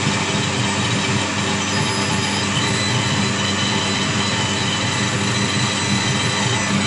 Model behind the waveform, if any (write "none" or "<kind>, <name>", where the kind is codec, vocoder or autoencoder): none